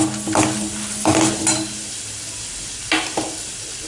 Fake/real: real